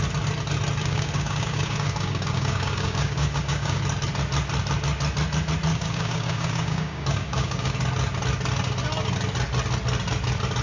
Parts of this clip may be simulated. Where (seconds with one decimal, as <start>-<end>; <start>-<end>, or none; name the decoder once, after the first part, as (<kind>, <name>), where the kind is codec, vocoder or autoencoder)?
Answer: 0.8-3.8 (codec, DAC); 5.7-7.7